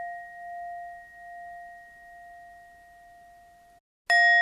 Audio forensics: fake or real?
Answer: real